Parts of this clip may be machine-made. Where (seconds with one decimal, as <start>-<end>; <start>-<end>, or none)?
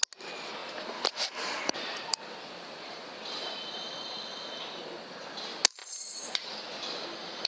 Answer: 0.6-3.1